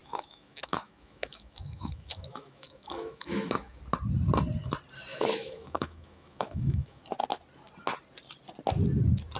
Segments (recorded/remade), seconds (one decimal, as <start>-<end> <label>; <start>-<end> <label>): 0.0-3.8 remade; 3.8-5.1 recorded; 5.1-7.0 remade; 7.0-9.4 recorded